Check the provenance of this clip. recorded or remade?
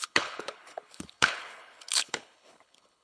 remade